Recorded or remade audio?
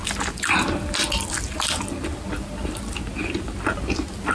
recorded